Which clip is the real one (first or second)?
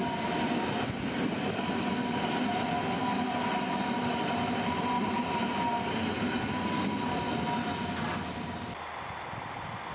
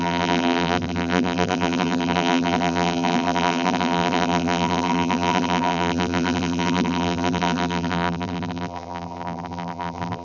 first